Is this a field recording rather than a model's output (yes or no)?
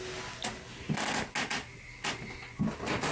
yes